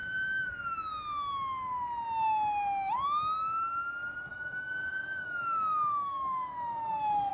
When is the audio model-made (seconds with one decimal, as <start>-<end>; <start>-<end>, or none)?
0.0-0.5; 4.3-7.3